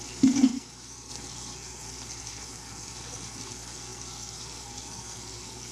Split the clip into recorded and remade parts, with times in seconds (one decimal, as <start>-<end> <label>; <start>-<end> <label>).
0.0-5.7 remade